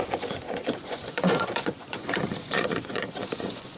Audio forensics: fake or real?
fake